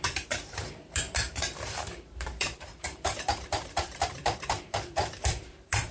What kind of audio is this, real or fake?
fake